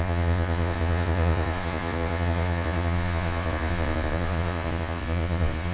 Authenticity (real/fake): fake